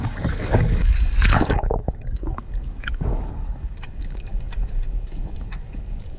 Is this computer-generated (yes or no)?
yes